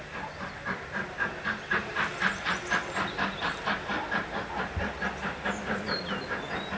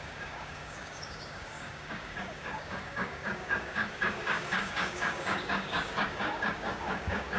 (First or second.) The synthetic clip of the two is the second